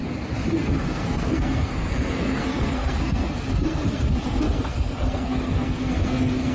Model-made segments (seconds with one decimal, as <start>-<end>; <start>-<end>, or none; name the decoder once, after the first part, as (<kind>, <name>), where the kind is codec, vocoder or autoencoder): 0.5-6.5 (codec, SNAC)